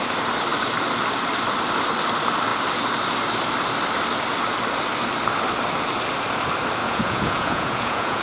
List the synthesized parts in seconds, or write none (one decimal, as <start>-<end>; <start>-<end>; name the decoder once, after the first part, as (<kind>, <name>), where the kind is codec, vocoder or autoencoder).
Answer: 6.8-8.2 (vocoder, Vocos)